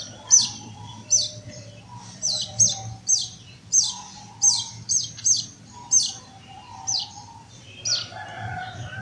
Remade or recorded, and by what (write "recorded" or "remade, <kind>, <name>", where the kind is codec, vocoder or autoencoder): remade, vocoder, BigVGAN v2